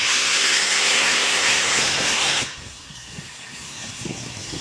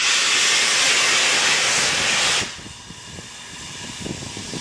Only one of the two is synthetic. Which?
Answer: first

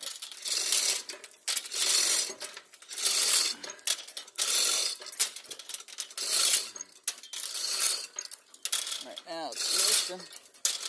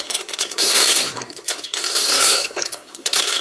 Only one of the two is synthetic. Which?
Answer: second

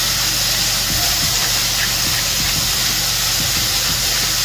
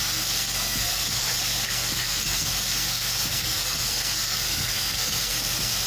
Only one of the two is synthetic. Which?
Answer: second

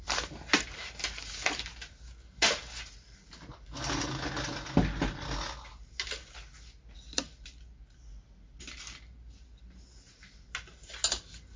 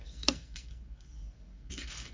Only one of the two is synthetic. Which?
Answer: second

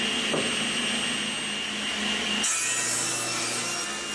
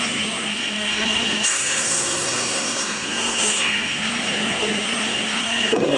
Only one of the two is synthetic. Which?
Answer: second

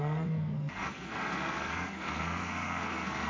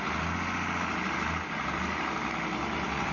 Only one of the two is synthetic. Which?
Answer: first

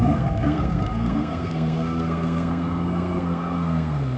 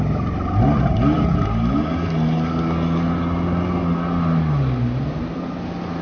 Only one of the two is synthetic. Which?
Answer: first